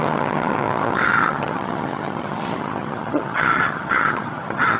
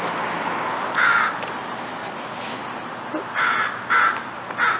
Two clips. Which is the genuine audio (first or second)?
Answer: second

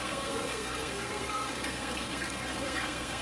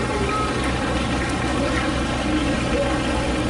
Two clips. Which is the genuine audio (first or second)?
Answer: second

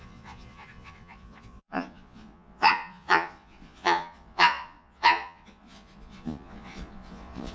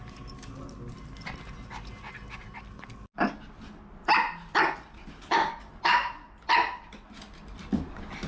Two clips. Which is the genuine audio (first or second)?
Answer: second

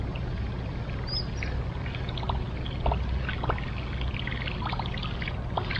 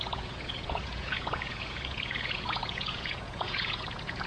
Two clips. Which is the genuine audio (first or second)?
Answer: first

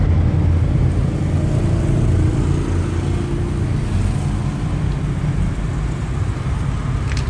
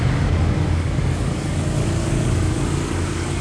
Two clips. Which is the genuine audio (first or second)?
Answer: first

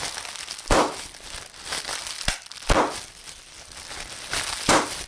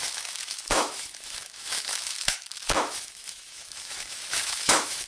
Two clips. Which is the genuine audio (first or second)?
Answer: first